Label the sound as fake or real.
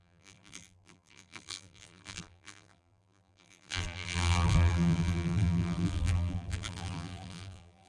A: fake